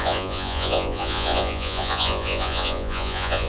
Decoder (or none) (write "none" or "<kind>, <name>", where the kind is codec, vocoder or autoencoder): vocoder, Vocos